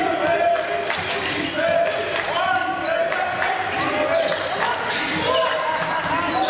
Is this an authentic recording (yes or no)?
yes